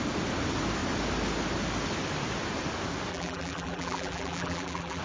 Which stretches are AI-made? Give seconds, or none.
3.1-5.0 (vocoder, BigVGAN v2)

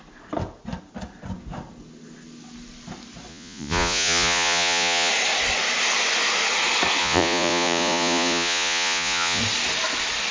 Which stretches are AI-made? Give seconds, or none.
3.3-5.1 (vocoder, Vocos); 7.0-9.4

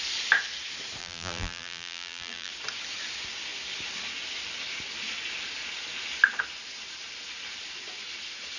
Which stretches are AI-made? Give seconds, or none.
1.0-2.5 (vocoder, BigVGAN v2)

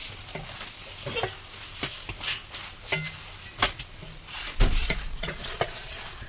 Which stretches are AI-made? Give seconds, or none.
4.8-6.3 (vocoder, Vocos)

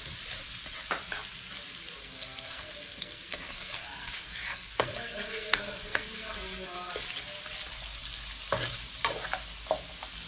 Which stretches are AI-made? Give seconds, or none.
2.0-6.9 (codec, SNAC)